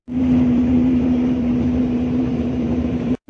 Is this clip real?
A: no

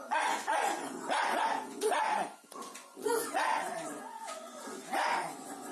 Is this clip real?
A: no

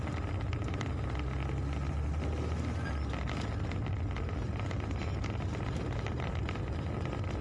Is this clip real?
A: yes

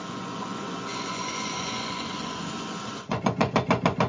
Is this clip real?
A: no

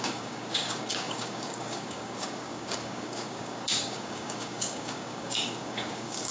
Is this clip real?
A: no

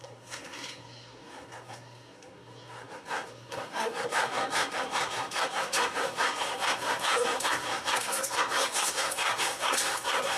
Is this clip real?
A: no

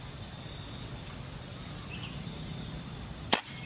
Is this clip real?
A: yes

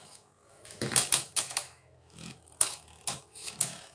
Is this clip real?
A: no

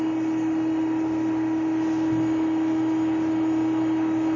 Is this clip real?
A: yes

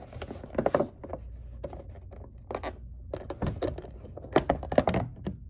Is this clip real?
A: yes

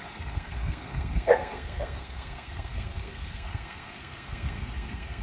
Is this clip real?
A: no